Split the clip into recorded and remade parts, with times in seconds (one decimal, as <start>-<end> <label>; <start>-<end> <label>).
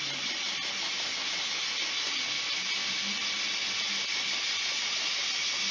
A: 0.0-5.7 recorded